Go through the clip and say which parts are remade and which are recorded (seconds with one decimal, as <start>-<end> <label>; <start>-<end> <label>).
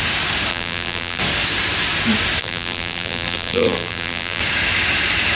0.0-0.5 recorded; 0.5-1.2 remade; 1.2-2.4 recorded; 2.4-4.4 remade; 4.4-5.3 recorded